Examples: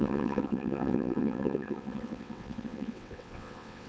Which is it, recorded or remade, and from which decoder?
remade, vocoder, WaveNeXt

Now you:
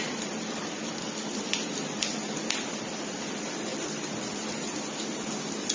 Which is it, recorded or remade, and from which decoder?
recorded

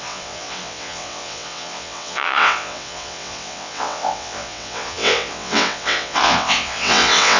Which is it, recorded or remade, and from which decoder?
remade, vocoder, WaveNeXt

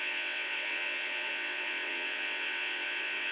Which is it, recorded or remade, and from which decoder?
remade, vocoder, WaveNeXt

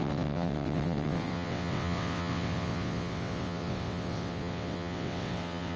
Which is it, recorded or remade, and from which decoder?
remade, vocoder, WaveNeXt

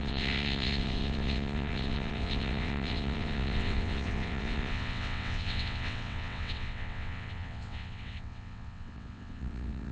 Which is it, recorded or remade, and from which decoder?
remade, vocoder, WaveNeXt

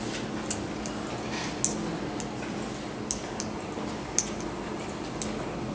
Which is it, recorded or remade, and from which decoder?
recorded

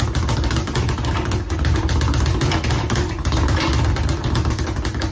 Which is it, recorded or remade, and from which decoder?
recorded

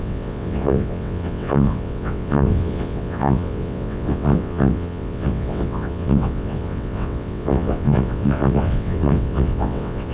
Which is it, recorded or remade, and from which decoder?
remade, vocoder, WaveNeXt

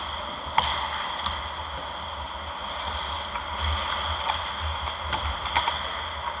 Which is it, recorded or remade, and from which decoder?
recorded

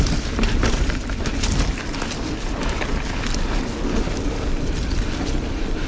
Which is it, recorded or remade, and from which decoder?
recorded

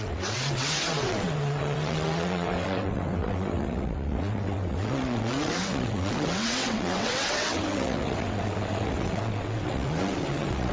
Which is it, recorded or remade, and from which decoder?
remade, vocoder, WaveNeXt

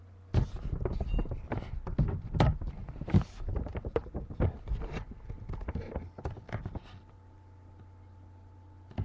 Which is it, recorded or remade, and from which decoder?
recorded